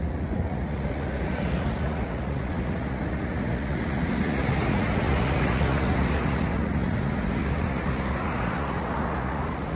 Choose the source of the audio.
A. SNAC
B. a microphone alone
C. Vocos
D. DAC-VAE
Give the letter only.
C